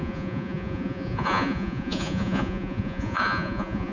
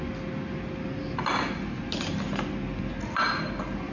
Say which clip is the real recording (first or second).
second